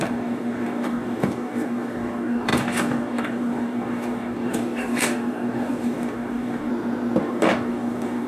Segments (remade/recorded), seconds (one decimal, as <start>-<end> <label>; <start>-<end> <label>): 0.0-6.7 remade; 6.7-7.2 recorded; 7.2-8.3 remade